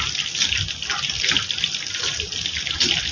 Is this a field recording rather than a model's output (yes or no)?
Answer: yes